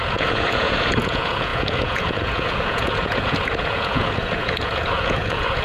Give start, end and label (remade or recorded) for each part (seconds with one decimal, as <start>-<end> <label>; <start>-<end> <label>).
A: 0.0-5.6 remade